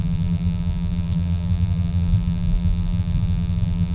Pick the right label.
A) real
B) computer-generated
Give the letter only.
B